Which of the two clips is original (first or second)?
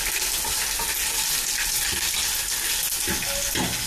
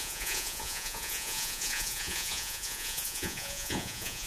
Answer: first